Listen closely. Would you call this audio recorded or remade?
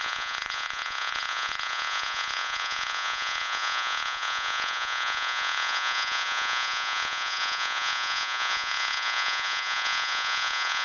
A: remade